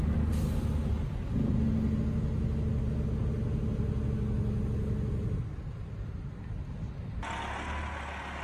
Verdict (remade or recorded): recorded